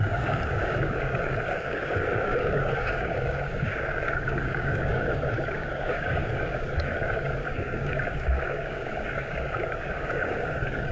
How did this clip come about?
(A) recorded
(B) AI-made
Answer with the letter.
B